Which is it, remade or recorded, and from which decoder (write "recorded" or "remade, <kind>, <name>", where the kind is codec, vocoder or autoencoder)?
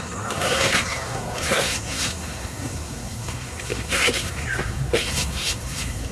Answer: remade, codec, SNAC